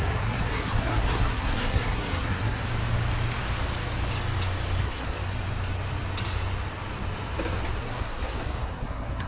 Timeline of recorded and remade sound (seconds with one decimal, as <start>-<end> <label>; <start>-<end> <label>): 0.0-2.6 remade; 2.6-4.8 recorded; 4.8-5.2 remade; 5.2-7.8 recorded; 7.8-9.3 remade